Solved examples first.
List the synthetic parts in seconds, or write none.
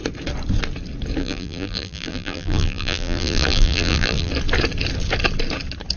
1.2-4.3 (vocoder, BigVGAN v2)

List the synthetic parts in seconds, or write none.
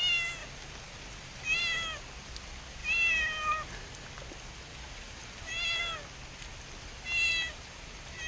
0.4-1.6 (vocoder, BigVGAN v2); 4.7-5.5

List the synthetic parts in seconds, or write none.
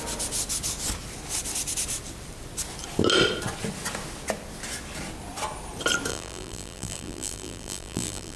6.1-8.4 (vocoder, BigVGAN v2)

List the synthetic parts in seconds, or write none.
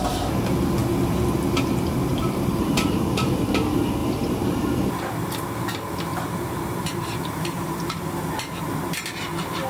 2.1-3.4 (vocoder, BigVGAN v2); 4.0-5.0; 6.1-8.9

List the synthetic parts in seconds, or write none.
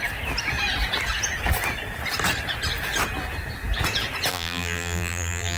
4.3-5.6 (vocoder, BigVGAN v2)